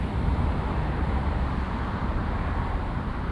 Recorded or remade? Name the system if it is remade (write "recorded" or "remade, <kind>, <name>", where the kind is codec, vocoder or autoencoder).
remade, vocoder, BigVGAN v2